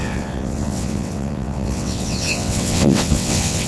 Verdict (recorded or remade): remade